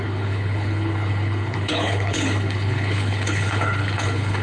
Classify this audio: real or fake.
fake